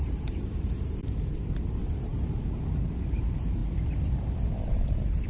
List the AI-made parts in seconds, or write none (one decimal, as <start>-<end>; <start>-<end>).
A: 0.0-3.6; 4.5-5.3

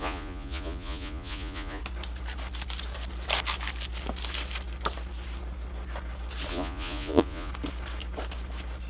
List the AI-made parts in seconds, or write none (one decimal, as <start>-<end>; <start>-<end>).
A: 0.0-1.8; 6.5-7.5

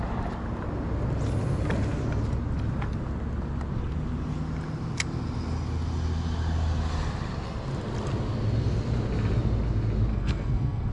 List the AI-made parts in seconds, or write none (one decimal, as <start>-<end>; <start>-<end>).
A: 10.1-10.9

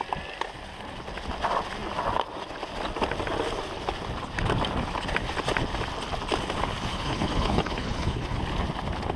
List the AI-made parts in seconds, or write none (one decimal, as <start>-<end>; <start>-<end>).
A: 6.9-8.4

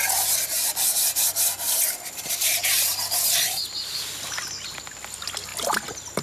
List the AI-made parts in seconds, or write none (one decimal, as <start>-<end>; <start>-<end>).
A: none

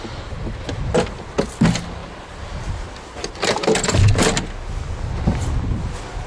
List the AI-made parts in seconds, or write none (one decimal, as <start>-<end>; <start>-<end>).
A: none

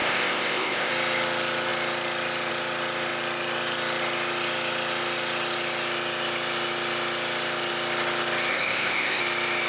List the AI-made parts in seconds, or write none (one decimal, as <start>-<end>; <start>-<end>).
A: 0.0-0.9; 8.5-9.2

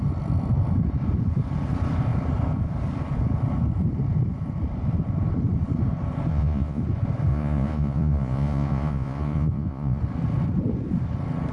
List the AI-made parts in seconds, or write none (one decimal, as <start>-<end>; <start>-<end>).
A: 6.3-6.8; 7.3-10.0